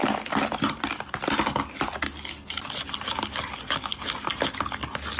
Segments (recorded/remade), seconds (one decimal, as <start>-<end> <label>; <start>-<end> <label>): 0.0-5.2 recorded